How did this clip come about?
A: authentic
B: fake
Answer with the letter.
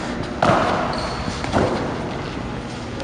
A